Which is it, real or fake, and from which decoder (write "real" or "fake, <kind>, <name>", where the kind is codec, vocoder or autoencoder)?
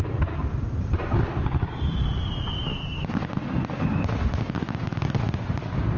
real